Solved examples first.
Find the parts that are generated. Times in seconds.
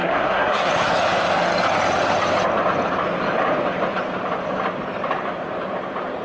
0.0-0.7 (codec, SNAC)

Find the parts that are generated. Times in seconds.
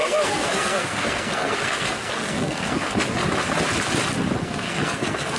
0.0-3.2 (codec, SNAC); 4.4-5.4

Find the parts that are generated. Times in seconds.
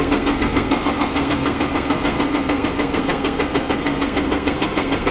0.0-5.1 (codec, SNAC)